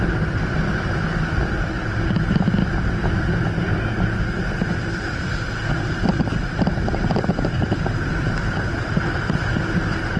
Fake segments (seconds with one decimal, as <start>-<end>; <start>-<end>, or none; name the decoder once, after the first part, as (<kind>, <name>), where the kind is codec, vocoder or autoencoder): none